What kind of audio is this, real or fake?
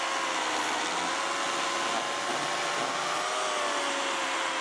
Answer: real